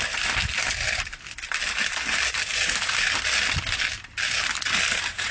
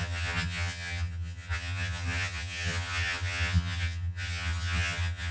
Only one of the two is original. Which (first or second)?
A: first